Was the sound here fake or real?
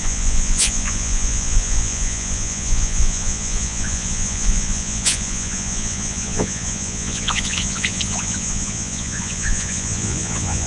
fake